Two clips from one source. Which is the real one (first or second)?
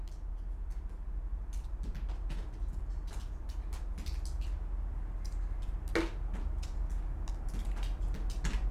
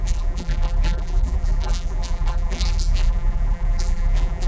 first